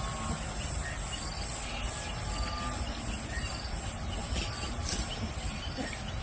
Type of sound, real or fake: real